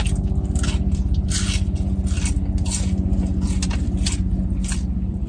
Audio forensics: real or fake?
real